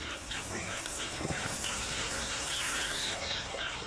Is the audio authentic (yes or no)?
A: no